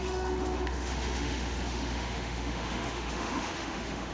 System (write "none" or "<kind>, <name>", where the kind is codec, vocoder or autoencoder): autoencoder, DAC-VAE